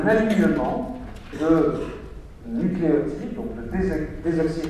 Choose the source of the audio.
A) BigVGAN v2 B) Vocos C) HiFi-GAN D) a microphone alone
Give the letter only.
D